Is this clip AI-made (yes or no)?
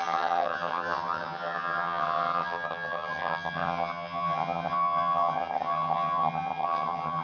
yes